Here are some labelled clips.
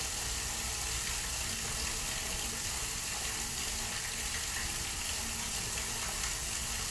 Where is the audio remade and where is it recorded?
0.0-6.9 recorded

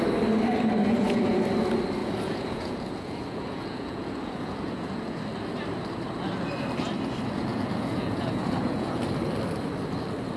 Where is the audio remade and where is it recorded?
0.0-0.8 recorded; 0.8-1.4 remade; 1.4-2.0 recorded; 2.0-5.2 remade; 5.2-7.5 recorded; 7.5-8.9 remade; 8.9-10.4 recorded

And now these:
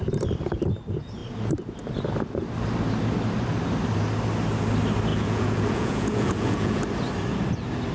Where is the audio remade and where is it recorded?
0.0-5.1 recorded; 5.1-6.8 remade; 6.8-7.9 recorded